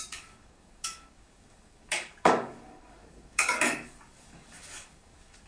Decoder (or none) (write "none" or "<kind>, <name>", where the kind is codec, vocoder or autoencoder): codec, DAC